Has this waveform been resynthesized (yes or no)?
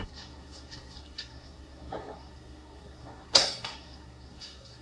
yes